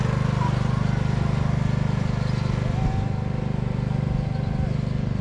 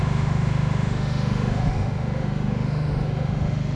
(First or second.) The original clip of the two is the first